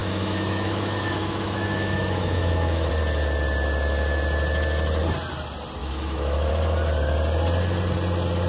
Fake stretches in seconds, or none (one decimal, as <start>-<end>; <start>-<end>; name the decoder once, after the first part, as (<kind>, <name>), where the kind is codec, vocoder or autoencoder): 0.0-2.9 (autoencoder, DAC-VAE); 5.8-6.5